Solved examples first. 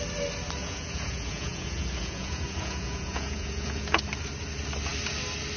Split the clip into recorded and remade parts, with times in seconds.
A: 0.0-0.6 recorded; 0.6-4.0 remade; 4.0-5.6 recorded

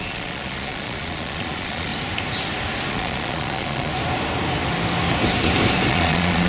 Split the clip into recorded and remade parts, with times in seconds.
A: 0.0-1.9 remade; 1.9-2.9 recorded; 2.9-3.9 remade; 3.9-5.9 recorded; 5.9-6.5 remade

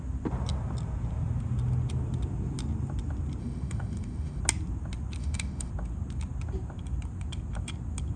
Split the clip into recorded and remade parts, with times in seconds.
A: 0.0-3.4 recorded; 3.4-4.4 remade; 4.4-5.2 recorded; 5.2-5.7 remade; 5.7-8.2 recorded

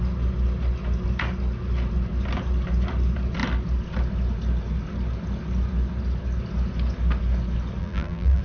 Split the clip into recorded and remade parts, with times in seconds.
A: 0.0-7.8 recorded; 7.8-8.4 remade